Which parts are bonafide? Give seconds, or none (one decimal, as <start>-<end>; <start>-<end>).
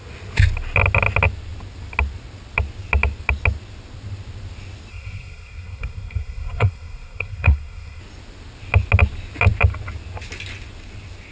0.0-4.9; 8.0-11.3